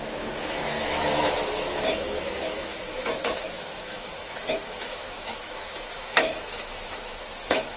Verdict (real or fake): fake